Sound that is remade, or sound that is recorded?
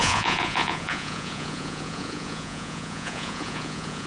remade